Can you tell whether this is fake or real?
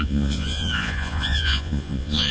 fake